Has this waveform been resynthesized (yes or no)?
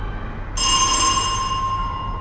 no